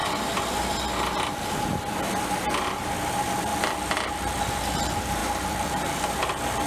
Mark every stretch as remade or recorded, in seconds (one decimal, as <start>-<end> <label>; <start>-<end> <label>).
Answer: 0.0-3.5 recorded; 3.5-4.6 remade; 4.6-5.2 recorded; 5.2-6.2 remade; 6.2-6.7 recorded